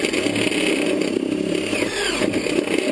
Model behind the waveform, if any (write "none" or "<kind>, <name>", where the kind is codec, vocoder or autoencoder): none